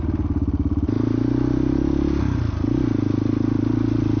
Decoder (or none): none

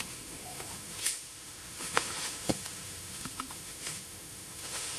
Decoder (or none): autoencoder, DAC-VAE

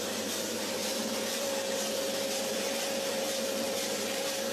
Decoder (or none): vocoder, BigVGAN v2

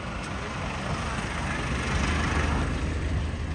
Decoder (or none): none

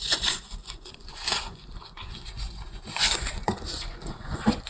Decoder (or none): vocoder, Vocos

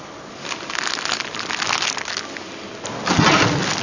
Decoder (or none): none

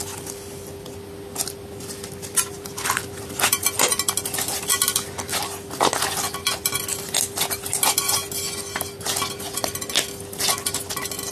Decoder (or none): none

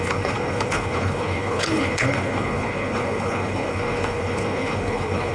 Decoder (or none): codec, HILCodec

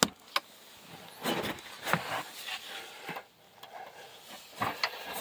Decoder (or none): none